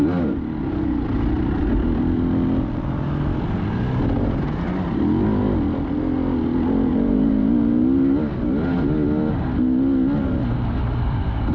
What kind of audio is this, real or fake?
real